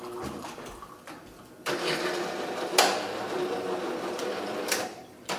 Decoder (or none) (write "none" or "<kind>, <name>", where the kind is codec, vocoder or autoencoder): vocoder, BigVGAN v2